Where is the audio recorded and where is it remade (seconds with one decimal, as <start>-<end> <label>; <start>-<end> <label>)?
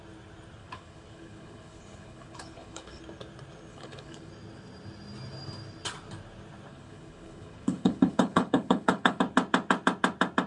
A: 0.0-0.6 recorded; 0.6-3.0 remade; 3.0-3.7 recorded; 3.7-4.3 remade; 4.3-6.7 recorded; 6.7-9.2 remade; 9.2-10.5 recorded